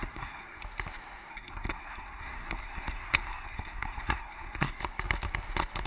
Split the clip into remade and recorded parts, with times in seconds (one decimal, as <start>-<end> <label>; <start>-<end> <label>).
0.0-0.6 remade; 0.6-1.3 recorded; 1.3-4.8 remade; 4.8-5.9 recorded

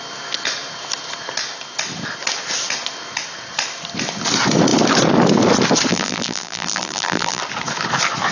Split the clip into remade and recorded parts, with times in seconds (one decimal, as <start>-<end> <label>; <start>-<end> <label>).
0.0-5.9 recorded; 5.9-7.4 remade; 7.4-8.3 recorded

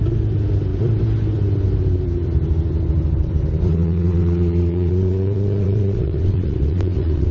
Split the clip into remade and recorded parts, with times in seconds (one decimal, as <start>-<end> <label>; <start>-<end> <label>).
0.0-3.7 recorded; 3.7-7.3 remade

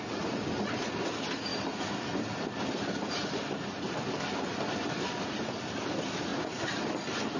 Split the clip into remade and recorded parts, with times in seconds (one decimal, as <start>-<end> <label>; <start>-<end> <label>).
0.0-7.4 recorded

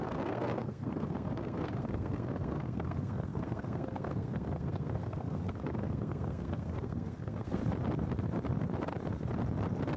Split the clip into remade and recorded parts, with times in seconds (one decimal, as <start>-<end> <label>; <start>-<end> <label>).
0.0-7.6 remade; 7.6-10.0 recorded

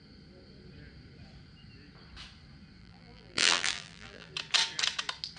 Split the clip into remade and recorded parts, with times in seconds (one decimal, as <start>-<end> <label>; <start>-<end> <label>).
0.0-2.8 recorded; 2.8-4.3 remade; 4.3-5.4 recorded

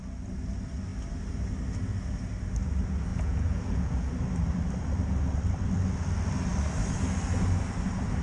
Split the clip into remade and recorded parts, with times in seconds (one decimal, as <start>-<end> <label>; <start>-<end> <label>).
0.0-3.1 recorded; 3.1-4.1 remade; 4.1-8.2 recorded

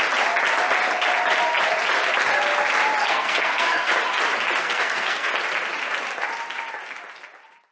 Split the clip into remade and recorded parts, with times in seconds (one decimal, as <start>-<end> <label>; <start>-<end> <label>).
0.0-3.0 recorded; 3.0-3.9 remade; 3.9-4.6 recorded; 4.6-5.3 remade; 5.3-7.7 recorded